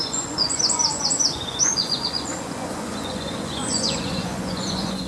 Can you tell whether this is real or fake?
fake